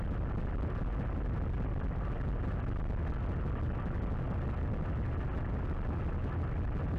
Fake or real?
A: real